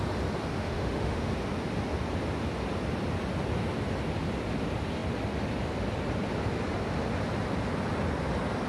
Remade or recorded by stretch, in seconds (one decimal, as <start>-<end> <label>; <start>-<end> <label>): 0.0-0.5 recorded; 0.5-1.3 remade; 1.3-8.7 recorded